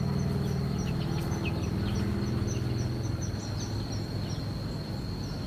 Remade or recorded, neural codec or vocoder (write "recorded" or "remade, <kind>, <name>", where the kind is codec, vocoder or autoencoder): recorded